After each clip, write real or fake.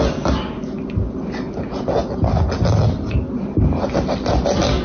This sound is real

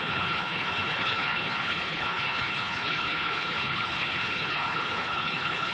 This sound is fake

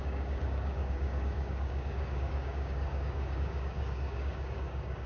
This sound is fake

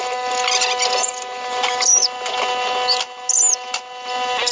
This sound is real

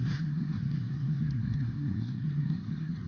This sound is fake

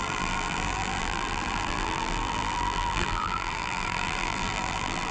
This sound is fake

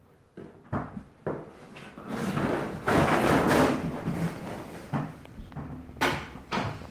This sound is real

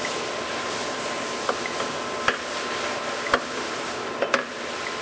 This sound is real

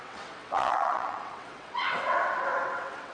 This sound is fake